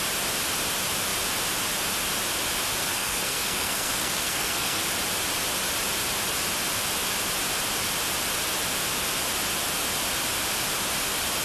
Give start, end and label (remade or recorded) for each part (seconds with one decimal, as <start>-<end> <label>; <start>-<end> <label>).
0.0-2.8 recorded; 2.8-4.8 remade; 4.8-11.4 recorded

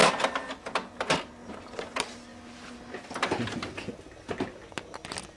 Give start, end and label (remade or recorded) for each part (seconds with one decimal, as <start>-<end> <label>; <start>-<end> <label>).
0.0-5.4 recorded